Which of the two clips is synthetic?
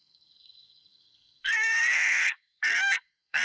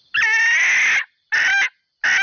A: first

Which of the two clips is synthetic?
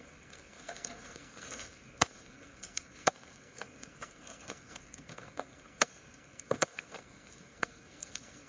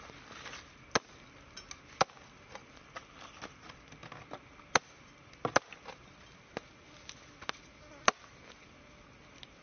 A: first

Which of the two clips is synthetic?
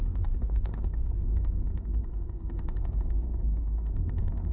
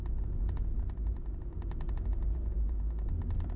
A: first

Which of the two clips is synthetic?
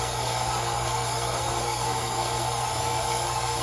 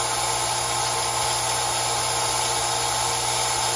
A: first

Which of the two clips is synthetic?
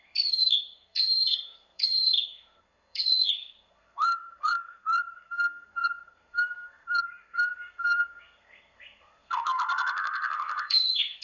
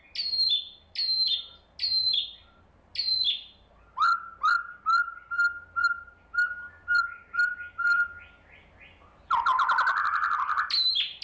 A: first